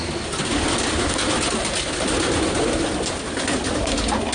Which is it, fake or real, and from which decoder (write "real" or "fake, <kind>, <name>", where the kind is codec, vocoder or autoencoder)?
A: real